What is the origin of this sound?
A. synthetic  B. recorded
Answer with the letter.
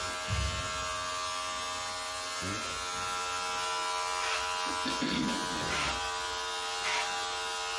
B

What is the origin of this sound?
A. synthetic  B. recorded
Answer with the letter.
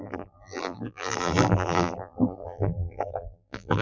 A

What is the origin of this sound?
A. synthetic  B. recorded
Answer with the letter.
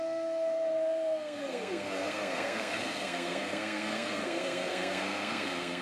A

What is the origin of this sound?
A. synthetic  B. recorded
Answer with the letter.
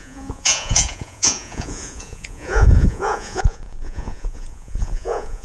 A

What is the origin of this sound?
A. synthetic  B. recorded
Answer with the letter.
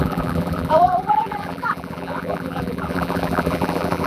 A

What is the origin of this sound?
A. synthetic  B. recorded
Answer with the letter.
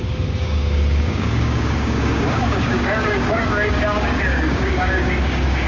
A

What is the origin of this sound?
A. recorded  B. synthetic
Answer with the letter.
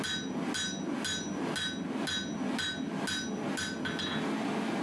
A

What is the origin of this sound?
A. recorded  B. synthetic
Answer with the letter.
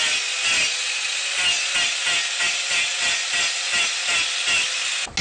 A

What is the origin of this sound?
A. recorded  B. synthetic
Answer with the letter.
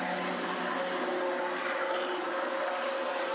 A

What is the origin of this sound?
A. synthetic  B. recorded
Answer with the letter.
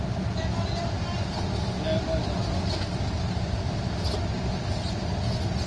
B